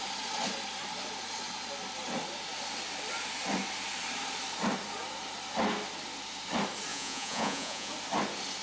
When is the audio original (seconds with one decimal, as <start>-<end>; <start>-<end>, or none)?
0.0-6.9; 7.9-8.6